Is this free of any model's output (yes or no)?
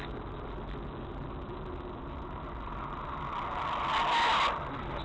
yes